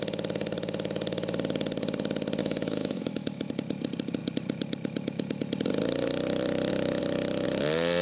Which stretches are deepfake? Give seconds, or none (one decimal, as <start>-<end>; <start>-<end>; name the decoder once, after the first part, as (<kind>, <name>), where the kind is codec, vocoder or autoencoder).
2.4-3.5 (autoencoder, DAC-VAE)